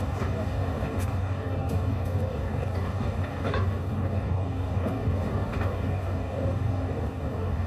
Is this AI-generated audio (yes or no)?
yes